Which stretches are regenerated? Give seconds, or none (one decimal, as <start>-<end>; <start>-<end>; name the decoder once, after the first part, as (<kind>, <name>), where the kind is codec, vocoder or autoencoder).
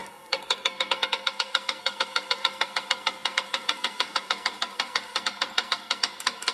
0.0-6.5 (codec, SNAC)